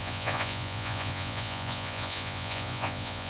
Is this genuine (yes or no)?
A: no